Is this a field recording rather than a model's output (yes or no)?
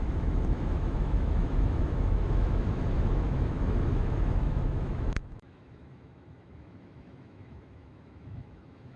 no